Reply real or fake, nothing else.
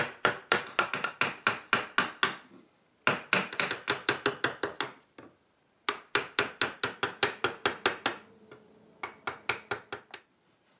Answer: real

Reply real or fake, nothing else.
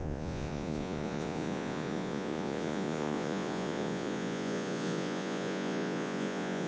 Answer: fake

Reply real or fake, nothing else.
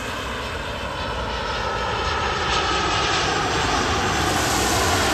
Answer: real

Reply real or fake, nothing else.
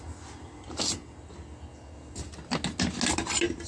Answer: real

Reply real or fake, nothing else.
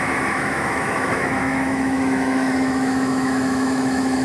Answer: fake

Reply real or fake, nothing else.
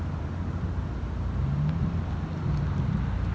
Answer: real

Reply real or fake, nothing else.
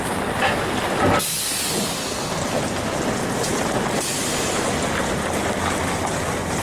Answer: real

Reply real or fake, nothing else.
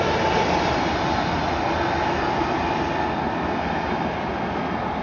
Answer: real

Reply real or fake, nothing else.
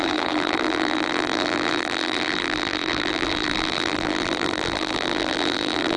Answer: fake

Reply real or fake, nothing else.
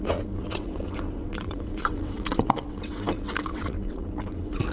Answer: fake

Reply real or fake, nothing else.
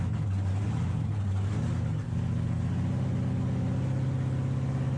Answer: real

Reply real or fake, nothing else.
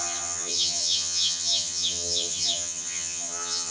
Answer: fake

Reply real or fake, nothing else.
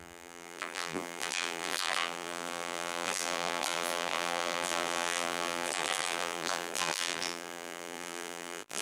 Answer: fake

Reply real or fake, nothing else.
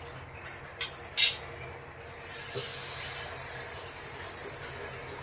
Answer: real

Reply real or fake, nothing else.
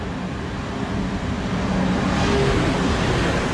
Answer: real